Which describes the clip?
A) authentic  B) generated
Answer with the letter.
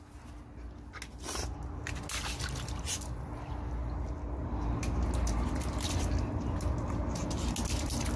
A